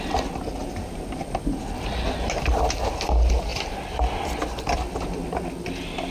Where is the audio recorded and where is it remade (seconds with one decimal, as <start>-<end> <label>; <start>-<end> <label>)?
0.0-0.6 recorded; 0.6-1.6 remade; 1.6-6.1 recorded

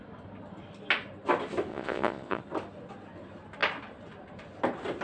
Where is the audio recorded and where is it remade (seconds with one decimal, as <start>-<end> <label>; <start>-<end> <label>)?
0.0-1.7 recorded; 1.7-2.4 remade; 2.4-5.0 recorded

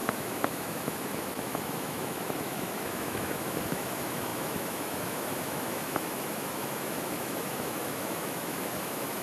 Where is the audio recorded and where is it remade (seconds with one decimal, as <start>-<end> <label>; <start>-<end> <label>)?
0.0-9.2 remade

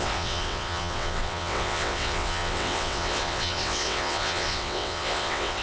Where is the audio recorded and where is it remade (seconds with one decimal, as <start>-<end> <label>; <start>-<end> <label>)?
0.0-5.6 remade

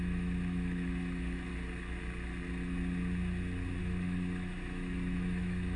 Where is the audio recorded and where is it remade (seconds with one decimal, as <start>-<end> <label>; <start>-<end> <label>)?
0.0-1.5 remade; 1.5-3.8 recorded; 3.8-5.8 remade